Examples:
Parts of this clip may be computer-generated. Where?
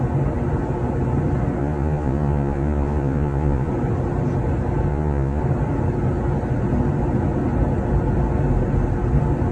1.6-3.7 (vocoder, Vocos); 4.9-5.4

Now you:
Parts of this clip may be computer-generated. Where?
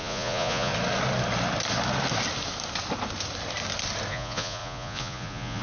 0.0-0.7 (vocoder, Vocos); 4.1-5.6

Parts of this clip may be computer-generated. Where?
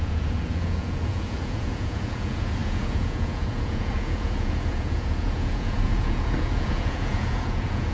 0.0-7.9 (vocoder, Vocos)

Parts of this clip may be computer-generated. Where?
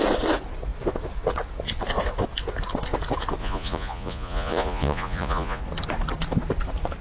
3.4-5.6 (vocoder, Vocos)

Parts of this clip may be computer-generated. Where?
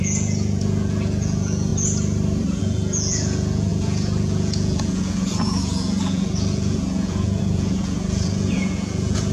0.0-1.7 (vocoder, Vocos); 2.6-9.3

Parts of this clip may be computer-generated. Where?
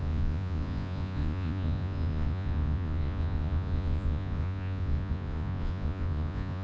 0.0-6.6 (vocoder, Vocos)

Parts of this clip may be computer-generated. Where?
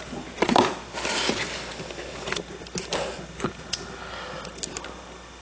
none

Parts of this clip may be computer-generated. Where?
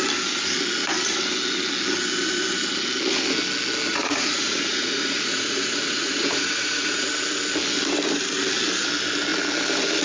3.9-7.1 (vocoder, Vocos)